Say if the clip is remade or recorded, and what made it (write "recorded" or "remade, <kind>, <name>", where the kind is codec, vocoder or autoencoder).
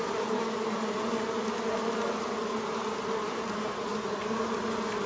recorded